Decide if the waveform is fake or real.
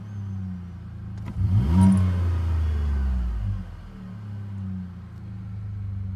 real